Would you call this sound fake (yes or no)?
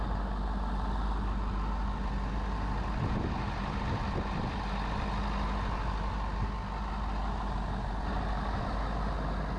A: no